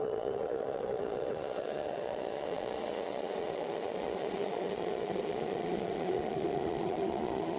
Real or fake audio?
fake